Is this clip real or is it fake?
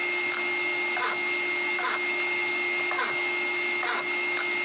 real